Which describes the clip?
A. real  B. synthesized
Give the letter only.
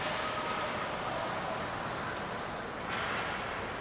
A